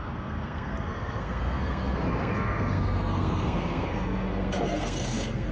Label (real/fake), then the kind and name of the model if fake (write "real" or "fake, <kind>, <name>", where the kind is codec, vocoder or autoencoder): fake, codec, SNAC